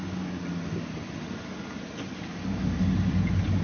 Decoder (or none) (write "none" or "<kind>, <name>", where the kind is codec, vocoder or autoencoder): none